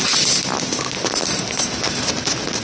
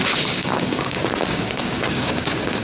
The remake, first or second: second